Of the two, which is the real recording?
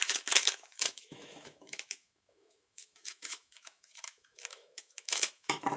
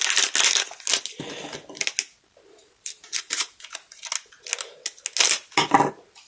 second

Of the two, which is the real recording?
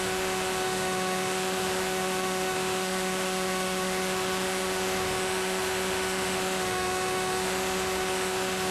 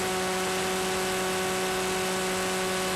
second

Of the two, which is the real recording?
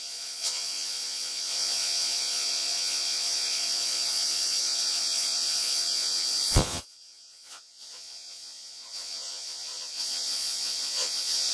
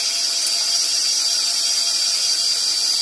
second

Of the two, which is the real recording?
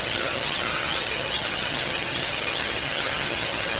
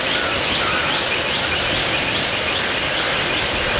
second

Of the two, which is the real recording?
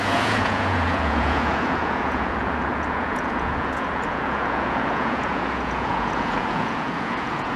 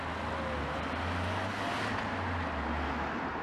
second